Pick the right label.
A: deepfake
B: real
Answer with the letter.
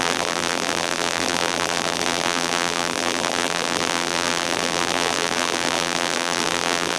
A